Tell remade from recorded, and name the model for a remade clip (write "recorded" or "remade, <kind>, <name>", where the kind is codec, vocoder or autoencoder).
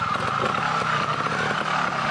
recorded